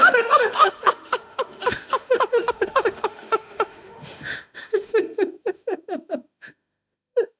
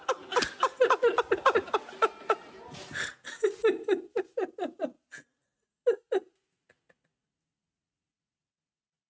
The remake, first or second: first